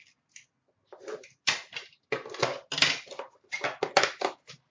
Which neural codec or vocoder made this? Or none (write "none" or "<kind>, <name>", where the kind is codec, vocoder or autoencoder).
none